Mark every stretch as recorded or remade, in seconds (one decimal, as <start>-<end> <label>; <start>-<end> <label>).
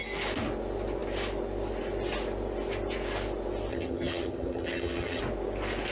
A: 0.0-3.7 recorded; 3.7-5.2 remade; 5.2-5.9 recorded